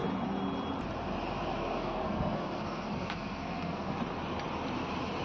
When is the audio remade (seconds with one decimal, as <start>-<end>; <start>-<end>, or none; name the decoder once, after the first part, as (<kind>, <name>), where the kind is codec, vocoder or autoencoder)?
1.6-4.0 (codec, SNAC)